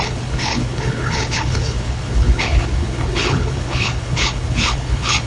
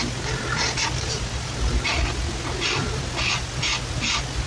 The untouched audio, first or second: second